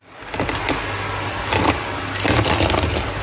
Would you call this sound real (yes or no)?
yes